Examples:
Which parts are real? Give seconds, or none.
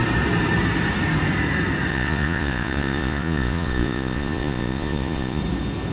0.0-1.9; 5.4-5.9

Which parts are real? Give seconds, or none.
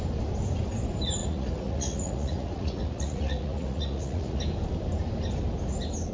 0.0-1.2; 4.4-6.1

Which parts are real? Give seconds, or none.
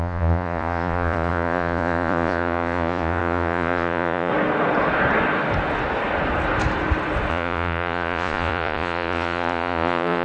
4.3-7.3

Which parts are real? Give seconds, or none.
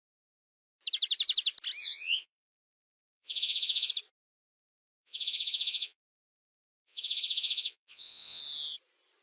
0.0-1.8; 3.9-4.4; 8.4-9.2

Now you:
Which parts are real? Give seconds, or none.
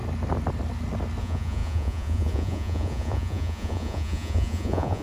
0.0-1.2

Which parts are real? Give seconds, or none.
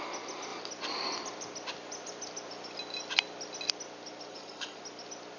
0.0-4.3; 4.8-5.4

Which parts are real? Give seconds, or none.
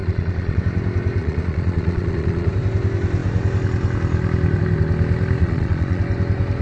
0.6-1.2; 2.5-5.4; 6.0-6.6